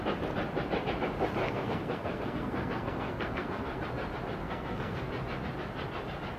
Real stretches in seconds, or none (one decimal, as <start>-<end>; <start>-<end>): 0.0-1.4; 3.8-4.4; 5.1-6.4